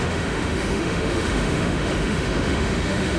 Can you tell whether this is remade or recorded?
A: remade